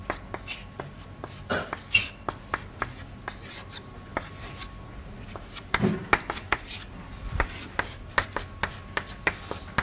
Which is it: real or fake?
real